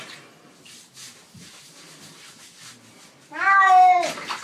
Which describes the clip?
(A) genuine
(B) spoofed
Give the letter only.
A